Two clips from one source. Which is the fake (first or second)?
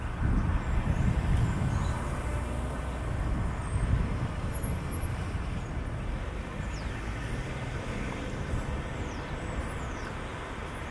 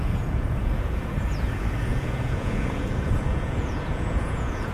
second